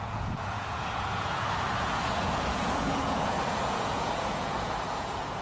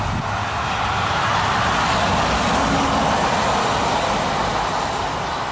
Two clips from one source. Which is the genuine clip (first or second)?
second